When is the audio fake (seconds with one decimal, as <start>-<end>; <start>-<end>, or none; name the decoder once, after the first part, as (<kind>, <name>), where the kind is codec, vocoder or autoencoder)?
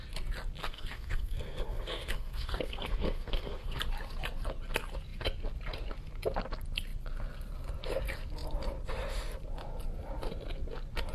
0.6-3.8 (codec, SNAC)